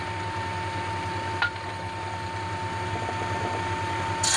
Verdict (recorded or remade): recorded